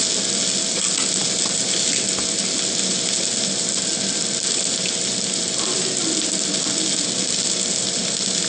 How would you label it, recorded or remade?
recorded